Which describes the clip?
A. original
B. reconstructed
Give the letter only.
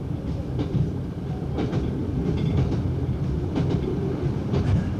B